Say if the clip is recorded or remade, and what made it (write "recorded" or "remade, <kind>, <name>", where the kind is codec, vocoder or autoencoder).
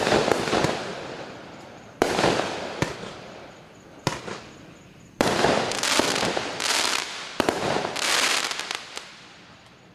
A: remade, vocoder, BigVGAN v2